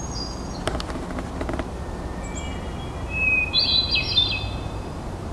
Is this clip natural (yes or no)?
yes